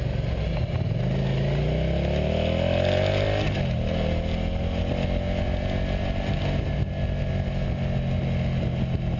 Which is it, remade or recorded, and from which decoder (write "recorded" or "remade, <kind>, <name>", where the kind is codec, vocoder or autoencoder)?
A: recorded